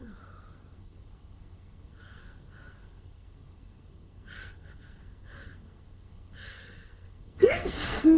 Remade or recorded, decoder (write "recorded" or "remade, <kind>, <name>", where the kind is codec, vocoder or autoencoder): remade, codec, SNAC